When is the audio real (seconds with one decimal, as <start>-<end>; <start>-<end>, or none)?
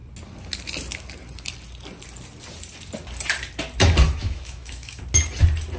0.0-4.2; 5.0-5.8